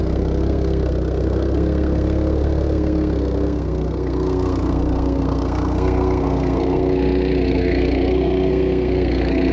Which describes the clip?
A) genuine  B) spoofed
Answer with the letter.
B